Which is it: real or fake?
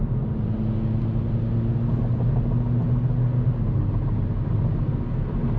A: real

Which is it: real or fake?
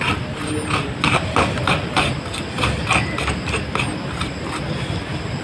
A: real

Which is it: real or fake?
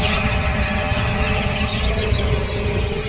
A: fake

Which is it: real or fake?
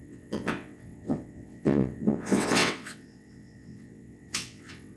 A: fake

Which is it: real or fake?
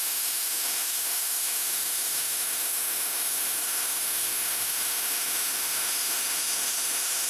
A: fake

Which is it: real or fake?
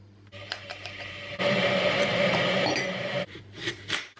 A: fake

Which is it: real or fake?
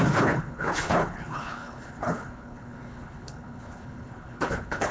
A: fake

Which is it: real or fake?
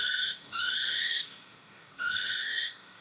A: fake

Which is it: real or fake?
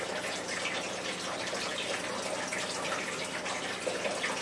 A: real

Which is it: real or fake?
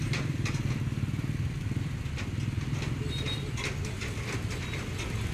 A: real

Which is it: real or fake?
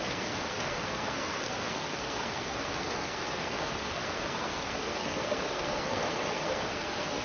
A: fake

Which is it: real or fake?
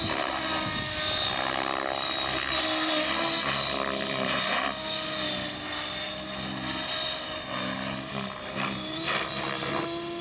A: real